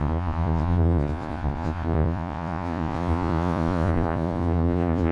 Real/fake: fake